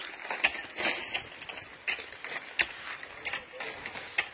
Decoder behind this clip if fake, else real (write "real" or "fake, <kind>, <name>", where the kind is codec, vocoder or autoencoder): real